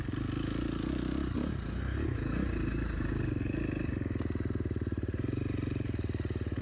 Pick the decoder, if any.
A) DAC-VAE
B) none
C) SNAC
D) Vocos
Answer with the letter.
B